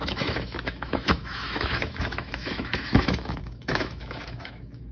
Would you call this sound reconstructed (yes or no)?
yes